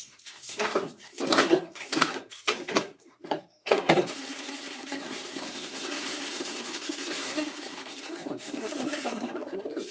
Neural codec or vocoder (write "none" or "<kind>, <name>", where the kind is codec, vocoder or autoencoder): codec, SNAC